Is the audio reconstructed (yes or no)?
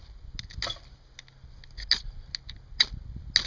no